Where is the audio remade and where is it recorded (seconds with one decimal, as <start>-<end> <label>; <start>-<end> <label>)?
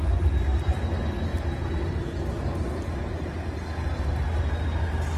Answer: 0.0-5.2 recorded